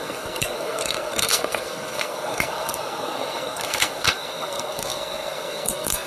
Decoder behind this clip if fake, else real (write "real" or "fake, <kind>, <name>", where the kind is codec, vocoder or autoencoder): fake, codec, SNAC